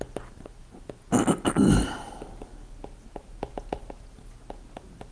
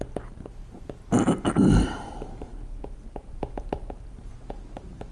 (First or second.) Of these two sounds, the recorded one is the first